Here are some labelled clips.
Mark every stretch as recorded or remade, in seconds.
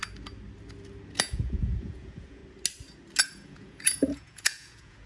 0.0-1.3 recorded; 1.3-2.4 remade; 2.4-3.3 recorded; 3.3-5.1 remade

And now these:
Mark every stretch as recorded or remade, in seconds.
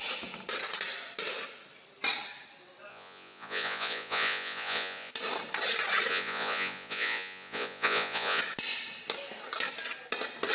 0.0-2.9 recorded; 2.9-5.1 remade; 5.1-6.1 recorded; 6.1-8.4 remade; 8.4-10.5 recorded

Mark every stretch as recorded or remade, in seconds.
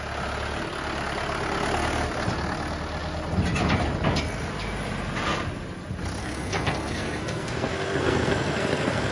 0.0-6.2 recorded; 6.2-9.1 remade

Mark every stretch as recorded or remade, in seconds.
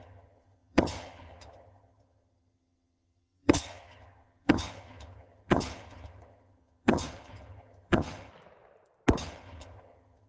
0.0-8.3 remade; 8.3-9.2 recorded; 9.2-10.3 remade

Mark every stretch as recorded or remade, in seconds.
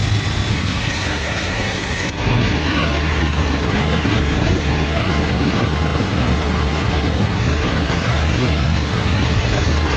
0.0-0.5 recorded; 0.5-10.0 remade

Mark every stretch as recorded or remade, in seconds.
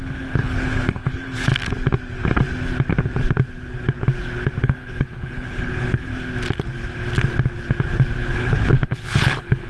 0.0-1.5 remade; 1.5-4.6 recorded; 4.6-6.1 remade; 6.1-8.3 recorded; 8.3-9.7 remade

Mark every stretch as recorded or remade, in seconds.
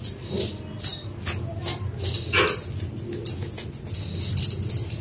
0.0-5.0 recorded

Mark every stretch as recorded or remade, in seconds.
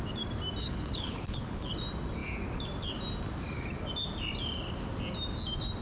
0.0-0.6 recorded; 0.6-1.7 remade; 1.7-5.8 recorded